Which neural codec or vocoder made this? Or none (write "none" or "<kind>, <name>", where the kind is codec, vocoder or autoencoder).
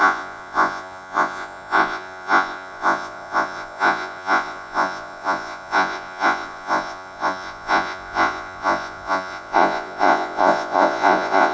vocoder, Vocos